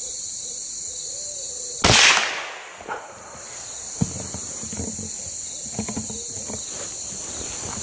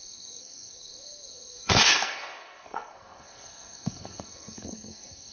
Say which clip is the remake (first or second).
second